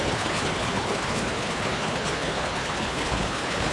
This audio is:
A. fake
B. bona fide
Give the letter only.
A